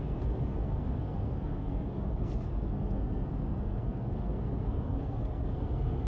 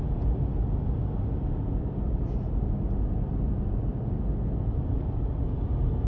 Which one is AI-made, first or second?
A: first